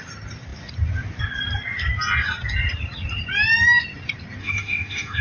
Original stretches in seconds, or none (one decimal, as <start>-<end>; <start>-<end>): 0.0-4.4